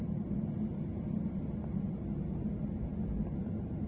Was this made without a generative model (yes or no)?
yes